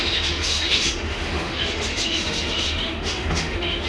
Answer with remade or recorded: remade